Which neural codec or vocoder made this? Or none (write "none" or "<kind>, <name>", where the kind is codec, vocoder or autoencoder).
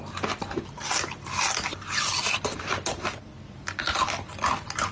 none